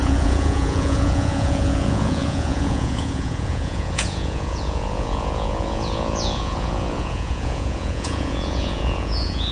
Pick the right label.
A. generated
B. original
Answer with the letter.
A